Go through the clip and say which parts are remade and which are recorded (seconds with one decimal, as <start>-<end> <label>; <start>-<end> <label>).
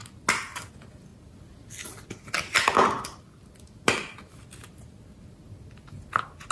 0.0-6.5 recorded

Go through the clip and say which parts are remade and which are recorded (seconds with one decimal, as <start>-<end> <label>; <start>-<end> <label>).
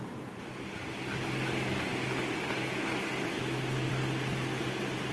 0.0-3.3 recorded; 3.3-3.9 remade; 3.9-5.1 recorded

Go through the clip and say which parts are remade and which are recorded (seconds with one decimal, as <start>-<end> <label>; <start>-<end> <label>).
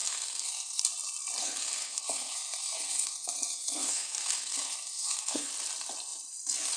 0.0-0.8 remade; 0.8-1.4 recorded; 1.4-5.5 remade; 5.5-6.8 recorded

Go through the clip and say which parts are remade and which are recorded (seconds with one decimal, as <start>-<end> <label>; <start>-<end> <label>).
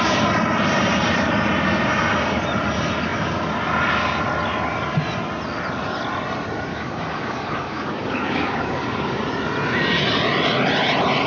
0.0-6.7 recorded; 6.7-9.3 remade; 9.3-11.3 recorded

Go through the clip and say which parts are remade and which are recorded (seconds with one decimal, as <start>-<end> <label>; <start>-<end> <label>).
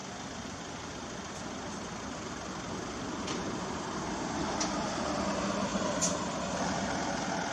0.0-4.4 remade; 4.4-5.7 recorded; 5.7-7.1 remade; 7.1-7.5 recorded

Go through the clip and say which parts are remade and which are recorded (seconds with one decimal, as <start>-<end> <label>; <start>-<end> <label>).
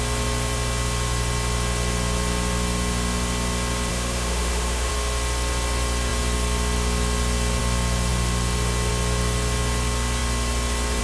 0.0-3.9 recorded; 3.9-4.9 remade; 4.9-11.0 recorded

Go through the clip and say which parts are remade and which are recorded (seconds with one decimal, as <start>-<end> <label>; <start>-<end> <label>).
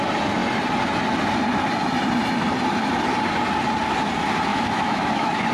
0.0-4.5 recorded; 4.5-5.5 remade